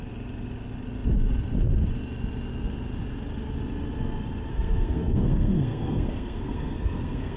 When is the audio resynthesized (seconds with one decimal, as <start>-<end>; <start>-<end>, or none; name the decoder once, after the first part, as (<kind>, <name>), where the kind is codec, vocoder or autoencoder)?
4.5-7.4 (codec, SNAC)